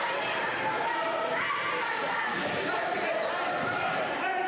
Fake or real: fake